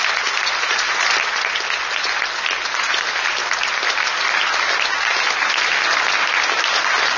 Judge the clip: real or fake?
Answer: real